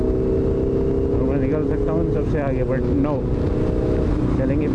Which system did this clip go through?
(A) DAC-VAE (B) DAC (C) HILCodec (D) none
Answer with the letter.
D